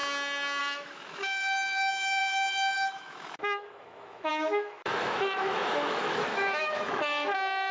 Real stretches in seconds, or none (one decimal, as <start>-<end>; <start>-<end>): 0.0-0.6